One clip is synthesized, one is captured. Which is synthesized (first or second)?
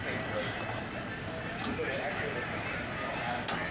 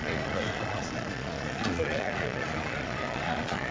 second